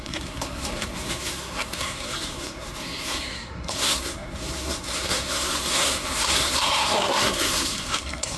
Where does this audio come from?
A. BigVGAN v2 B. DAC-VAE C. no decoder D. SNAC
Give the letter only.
D